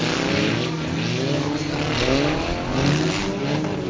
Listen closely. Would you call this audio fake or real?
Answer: real